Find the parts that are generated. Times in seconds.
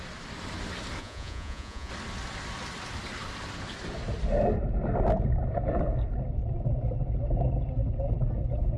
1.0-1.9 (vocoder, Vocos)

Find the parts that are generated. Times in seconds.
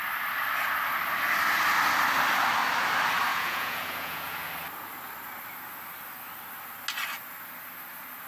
3.3-4.5 (vocoder, Vocos)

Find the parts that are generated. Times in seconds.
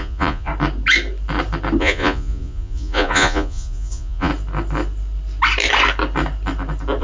0.0-0.5 (vocoder, Vocos); 1.8-4.3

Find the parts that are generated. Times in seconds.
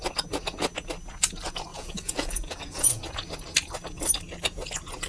1.7-3.0 (vocoder, Vocos)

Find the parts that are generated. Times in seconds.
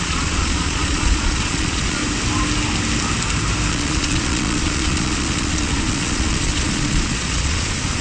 0.0-2.0 (vocoder, Vocos); 3.7-8.0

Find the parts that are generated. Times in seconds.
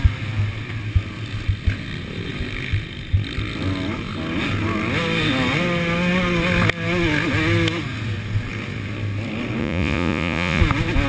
9.6-10.6 (vocoder, Vocos)